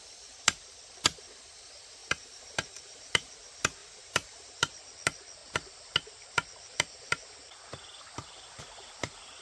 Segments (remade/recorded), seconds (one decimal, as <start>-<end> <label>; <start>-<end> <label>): 0.0-2.0 recorded; 2.0-3.3 remade; 3.3-3.8 recorded; 3.8-4.9 remade; 4.9-9.4 recorded